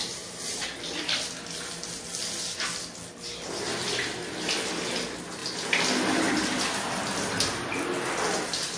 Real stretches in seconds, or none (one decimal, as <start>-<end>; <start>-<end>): 0.0-5.4; 6.2-8.8